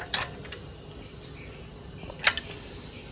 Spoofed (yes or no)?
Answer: no